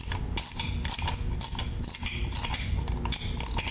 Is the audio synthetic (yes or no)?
no